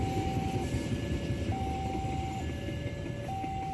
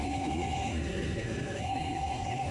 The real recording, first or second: first